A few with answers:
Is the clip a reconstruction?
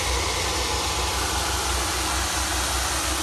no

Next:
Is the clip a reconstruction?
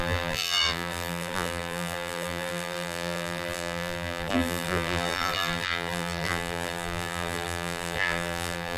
yes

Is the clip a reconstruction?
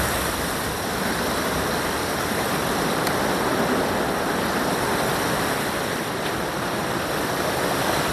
no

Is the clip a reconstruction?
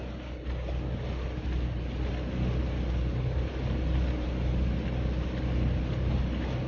no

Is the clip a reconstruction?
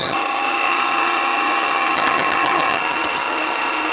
yes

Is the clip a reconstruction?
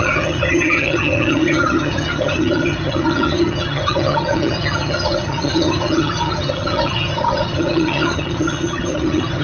yes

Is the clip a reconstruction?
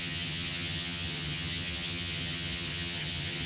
yes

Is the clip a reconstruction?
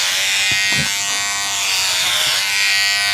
no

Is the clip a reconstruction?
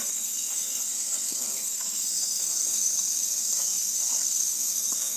yes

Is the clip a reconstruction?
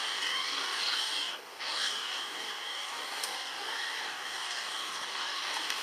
yes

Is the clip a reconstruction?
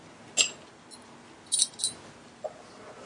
no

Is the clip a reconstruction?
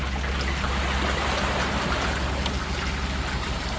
no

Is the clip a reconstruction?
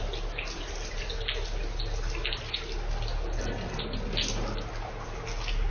no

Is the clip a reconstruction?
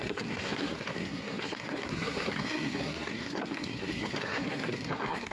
yes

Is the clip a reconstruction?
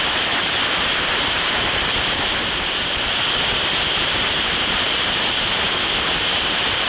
yes